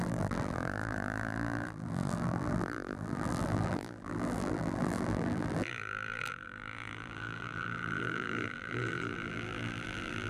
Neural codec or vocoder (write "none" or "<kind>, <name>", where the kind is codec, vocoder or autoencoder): vocoder, BigVGAN v2